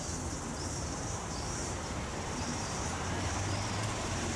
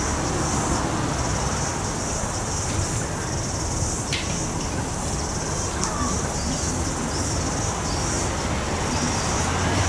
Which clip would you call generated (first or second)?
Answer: first